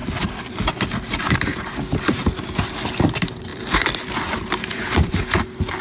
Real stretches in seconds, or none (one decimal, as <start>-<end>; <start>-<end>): 0.7-3.5; 5.1-5.8